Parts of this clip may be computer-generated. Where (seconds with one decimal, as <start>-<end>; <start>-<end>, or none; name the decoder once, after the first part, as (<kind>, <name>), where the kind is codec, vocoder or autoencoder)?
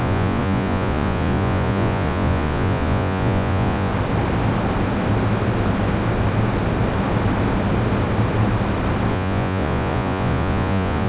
0.0-3.9 (vocoder, Vocos); 9.1-11.1